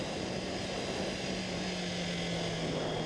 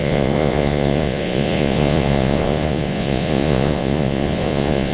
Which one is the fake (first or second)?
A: second